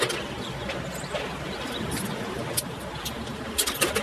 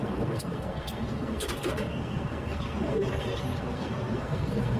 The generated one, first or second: second